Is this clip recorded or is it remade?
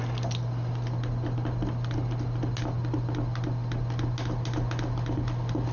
recorded